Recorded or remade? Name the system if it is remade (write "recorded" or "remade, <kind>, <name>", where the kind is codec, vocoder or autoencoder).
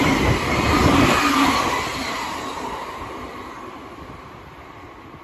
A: recorded